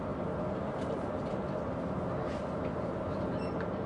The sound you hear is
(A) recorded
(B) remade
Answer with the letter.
A